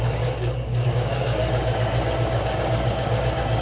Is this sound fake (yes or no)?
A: yes